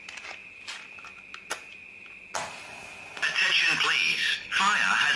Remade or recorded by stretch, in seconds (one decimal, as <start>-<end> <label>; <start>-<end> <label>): 0.0-4.1 recorded; 4.1-4.6 remade; 4.6-5.2 recorded